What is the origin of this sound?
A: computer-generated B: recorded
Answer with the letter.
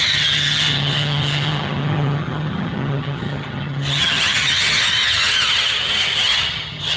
A